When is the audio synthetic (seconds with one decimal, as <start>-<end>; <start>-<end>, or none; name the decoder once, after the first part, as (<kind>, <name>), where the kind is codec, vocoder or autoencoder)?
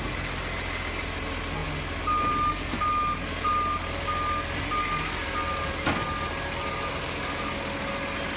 none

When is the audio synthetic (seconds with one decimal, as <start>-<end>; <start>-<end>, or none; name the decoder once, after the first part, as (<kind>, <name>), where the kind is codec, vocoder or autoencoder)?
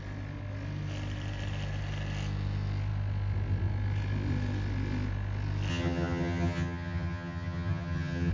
5.7-8.3 (vocoder, HiFi-GAN)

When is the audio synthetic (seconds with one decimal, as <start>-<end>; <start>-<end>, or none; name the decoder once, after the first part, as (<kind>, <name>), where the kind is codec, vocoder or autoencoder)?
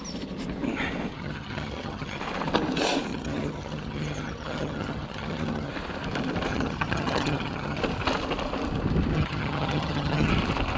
1.1-2.2 (vocoder, HiFi-GAN); 3.1-5.7; 6.5-7.8; 9.1-10.3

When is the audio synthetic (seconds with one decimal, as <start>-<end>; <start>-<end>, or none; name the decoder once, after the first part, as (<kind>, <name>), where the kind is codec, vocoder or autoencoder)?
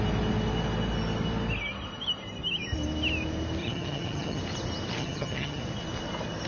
3.6-4.4 (vocoder, HiFi-GAN); 5.0-5.6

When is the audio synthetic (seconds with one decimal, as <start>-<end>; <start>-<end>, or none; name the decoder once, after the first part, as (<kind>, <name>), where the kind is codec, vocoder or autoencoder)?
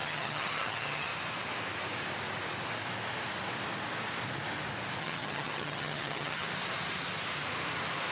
0.0-1.1 (vocoder, HiFi-GAN); 5.0-6.5